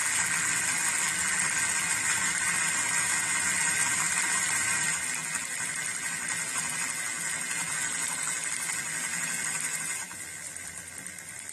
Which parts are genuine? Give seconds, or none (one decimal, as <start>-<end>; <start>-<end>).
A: 0.0-1.9